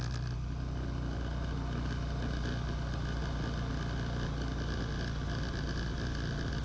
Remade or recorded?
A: recorded